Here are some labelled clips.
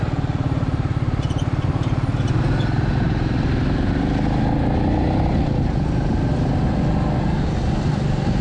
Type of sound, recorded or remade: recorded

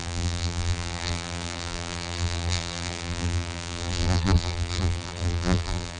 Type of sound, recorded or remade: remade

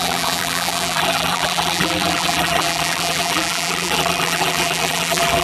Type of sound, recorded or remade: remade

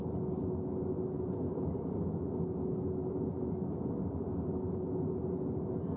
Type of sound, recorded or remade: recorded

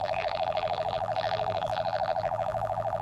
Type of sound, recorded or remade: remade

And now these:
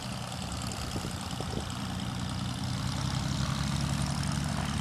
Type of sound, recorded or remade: recorded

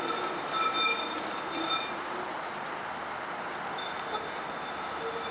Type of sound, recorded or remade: recorded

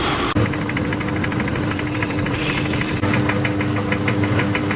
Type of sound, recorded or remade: recorded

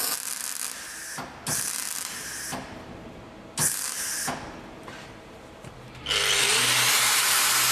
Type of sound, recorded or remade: recorded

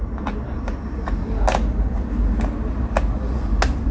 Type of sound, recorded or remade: recorded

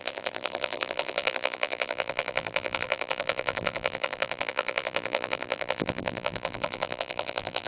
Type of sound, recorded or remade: remade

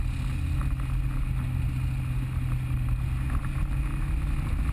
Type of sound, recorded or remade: recorded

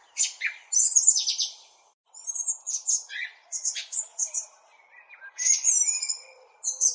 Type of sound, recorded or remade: remade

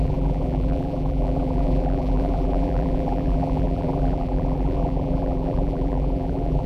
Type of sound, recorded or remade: remade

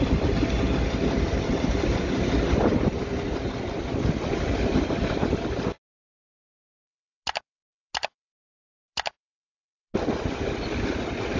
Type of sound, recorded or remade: recorded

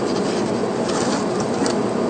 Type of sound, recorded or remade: remade